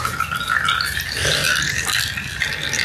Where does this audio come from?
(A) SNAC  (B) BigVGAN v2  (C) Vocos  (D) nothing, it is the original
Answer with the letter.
D